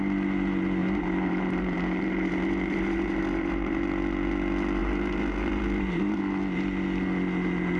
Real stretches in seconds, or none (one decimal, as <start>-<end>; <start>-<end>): 0.0-0.8; 3.8-4.8; 6.2-7.8